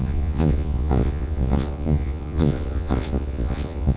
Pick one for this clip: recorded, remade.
remade